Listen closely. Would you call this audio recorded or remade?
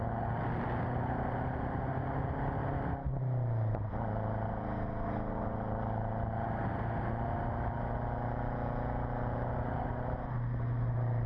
recorded